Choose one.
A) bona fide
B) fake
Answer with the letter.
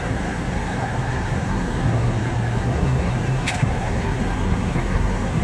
B